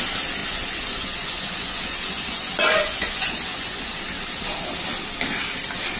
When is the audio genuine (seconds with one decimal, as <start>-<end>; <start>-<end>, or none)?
0.0-0.4; 4.0-6.0